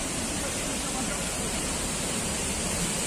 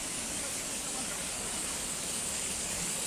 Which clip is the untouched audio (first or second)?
first